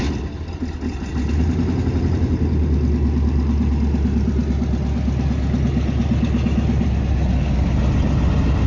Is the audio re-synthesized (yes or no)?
no